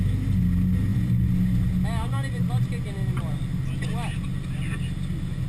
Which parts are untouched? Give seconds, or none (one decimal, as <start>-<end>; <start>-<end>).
0.0-5.5